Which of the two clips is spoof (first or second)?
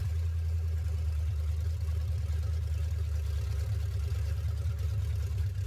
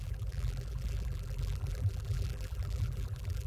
second